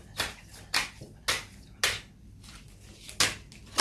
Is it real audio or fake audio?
real